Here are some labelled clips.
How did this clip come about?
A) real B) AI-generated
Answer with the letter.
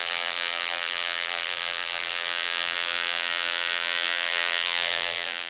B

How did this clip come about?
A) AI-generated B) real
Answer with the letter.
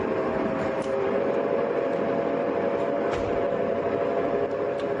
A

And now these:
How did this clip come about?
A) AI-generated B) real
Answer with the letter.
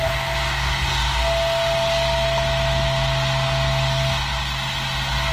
B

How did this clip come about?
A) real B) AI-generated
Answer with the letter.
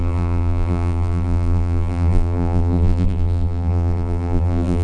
B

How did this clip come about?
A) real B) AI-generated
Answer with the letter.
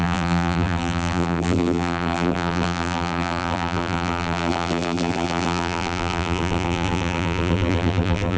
B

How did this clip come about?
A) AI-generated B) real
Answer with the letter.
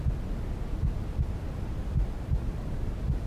B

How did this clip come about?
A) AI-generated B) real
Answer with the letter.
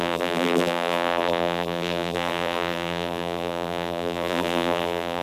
A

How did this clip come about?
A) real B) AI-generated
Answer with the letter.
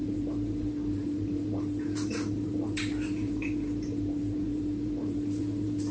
B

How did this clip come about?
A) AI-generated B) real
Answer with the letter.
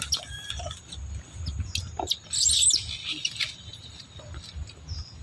B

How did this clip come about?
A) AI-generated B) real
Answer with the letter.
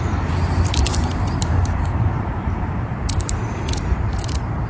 A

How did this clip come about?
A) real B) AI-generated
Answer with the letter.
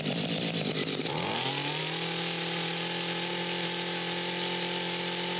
A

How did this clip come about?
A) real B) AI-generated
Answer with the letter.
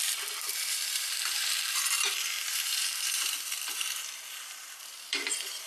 B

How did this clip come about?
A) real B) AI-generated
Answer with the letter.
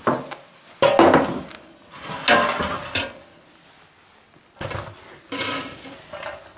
A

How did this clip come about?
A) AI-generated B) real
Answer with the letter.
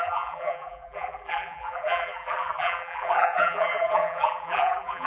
A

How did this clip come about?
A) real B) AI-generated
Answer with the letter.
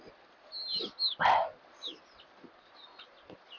A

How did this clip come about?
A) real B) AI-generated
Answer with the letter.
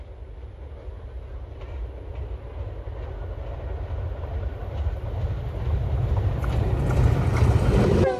A